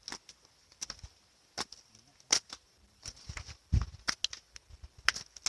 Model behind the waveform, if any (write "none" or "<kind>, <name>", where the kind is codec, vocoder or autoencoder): none